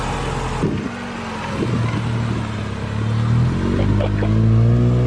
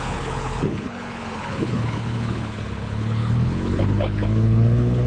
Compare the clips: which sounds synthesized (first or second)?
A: second